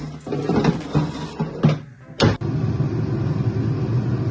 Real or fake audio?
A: real